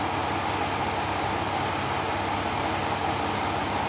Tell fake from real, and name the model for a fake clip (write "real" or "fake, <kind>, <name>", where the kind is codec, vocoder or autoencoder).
real